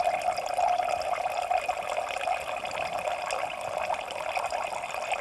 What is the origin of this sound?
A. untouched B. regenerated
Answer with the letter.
A